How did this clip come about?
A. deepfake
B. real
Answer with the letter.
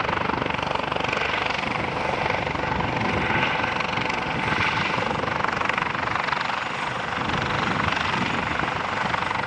B